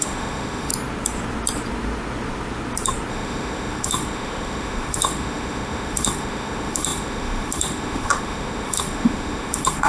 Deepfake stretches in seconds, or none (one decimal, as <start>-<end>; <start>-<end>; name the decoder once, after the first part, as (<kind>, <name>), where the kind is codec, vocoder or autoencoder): 0.0-0.7 (autoencoder, DAC-VAE); 3.1-9.9